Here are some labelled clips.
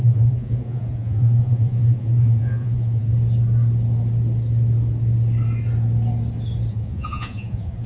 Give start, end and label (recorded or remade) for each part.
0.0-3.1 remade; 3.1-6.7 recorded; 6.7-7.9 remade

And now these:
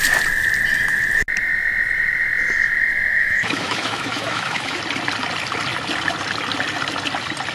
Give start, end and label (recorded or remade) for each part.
0.0-3.2 recorded; 3.2-4.8 remade; 4.8-7.5 recorded

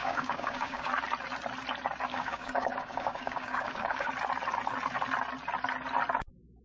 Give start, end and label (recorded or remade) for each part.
0.0-0.9 remade; 0.9-2.1 recorded; 2.1-4.1 remade; 4.1-6.6 recorded

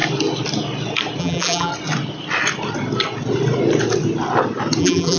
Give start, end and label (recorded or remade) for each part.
0.0-1.2 recorded; 1.2-1.7 remade; 1.7-4.8 recorded; 4.8-5.2 remade

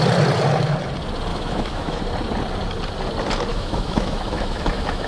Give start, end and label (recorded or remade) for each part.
0.0-1.3 recorded; 1.3-2.0 remade; 2.0-3.5 recorded; 3.5-5.1 remade

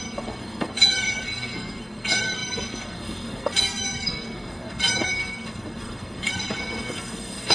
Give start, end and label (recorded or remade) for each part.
0.0-7.5 remade